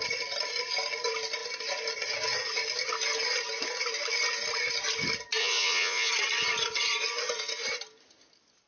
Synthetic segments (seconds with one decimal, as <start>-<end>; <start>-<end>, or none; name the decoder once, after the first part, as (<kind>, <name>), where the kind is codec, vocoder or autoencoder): 5.4-6.1 (vocoder, Vocos)